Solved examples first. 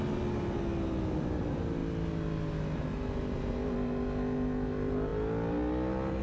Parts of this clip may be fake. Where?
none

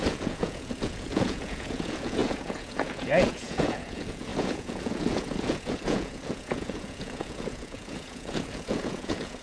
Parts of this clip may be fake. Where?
0.0-9.4 (vocoder, Vocos)

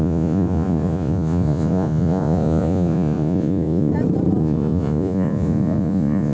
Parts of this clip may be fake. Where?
0.0-3.9 (vocoder, Vocos); 4.4-6.3

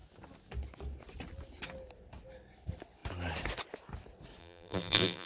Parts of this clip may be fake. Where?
4.4-5.3 (vocoder, BigVGAN v2)